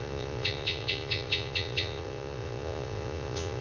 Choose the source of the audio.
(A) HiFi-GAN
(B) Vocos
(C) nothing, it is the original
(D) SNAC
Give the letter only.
B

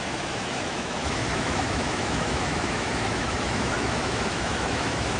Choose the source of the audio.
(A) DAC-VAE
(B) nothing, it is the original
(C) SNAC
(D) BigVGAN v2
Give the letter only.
A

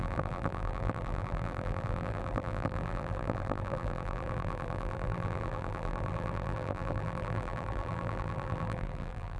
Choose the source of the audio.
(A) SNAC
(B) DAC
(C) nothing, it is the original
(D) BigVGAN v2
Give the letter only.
D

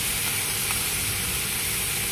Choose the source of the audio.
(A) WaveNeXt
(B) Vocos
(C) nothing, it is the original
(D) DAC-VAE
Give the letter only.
C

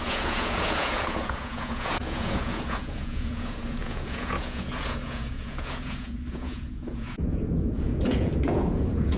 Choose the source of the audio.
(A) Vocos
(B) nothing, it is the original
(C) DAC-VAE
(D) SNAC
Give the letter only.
A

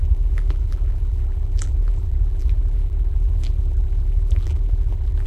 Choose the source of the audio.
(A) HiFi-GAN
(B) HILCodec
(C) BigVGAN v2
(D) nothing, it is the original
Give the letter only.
C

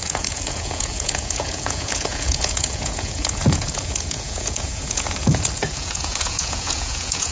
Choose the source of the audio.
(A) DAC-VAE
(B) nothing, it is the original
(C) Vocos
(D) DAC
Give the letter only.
C